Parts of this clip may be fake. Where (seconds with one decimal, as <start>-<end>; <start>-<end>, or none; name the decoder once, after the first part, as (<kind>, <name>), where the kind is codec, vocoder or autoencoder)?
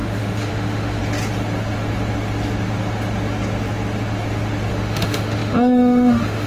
0.0-1.0 (autoencoder, DAC-VAE); 4.7-6.5